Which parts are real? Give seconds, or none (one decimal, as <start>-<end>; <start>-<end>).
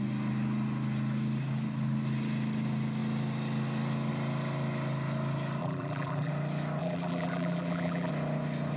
0.0-5.6; 6.3-6.8; 8.1-8.8